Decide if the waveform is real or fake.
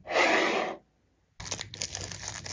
real